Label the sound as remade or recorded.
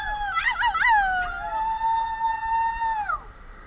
recorded